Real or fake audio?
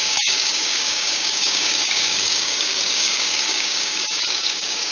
fake